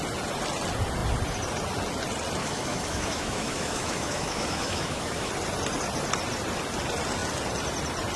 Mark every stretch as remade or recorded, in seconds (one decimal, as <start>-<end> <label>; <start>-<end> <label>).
0.0-2.4 recorded; 2.4-5.3 remade; 5.3-8.2 recorded